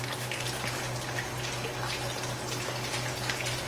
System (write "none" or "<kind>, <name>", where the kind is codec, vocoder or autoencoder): none